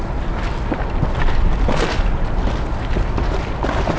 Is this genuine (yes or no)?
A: yes